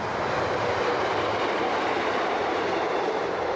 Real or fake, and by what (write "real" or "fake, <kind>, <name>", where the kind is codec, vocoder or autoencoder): fake, vocoder, BigVGAN v2